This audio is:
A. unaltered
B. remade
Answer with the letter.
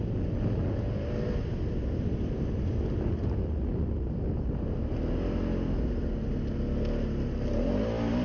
A